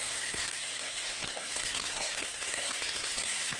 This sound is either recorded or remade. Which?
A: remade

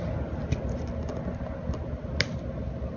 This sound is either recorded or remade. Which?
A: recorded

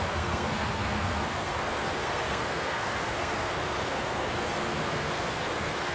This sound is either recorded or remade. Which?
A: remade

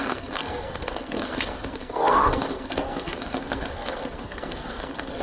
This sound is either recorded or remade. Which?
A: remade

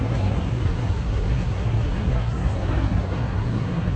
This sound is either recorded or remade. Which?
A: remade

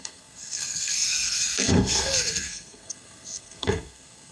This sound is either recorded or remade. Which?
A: remade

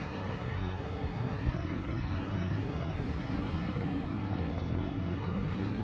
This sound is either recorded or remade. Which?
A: remade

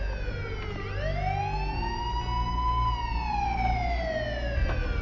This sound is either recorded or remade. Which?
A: recorded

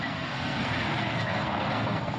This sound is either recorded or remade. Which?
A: remade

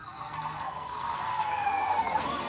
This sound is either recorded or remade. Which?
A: remade